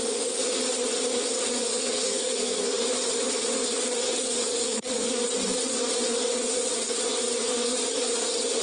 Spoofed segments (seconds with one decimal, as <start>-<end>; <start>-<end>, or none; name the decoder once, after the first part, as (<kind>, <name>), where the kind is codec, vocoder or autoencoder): 1.7-2.6 (codec, SNAC); 4.6-5.1